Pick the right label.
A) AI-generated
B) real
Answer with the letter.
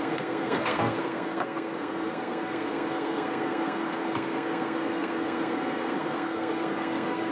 A